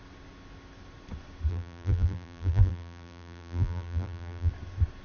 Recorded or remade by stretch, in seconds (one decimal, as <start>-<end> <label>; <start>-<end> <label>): 0.0-1.5 recorded; 1.5-4.5 remade; 4.5-5.0 recorded